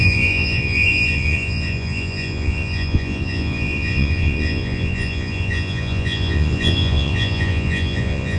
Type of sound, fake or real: fake